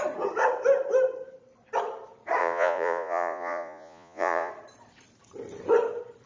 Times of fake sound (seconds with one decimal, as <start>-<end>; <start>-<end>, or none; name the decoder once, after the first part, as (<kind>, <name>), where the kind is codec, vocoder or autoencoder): 2.4-4.5 (vocoder, Vocos)